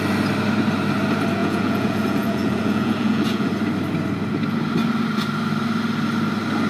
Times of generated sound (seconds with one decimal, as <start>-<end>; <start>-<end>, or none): 1.4-3.5